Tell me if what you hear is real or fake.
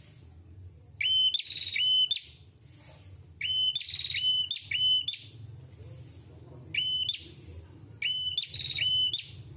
real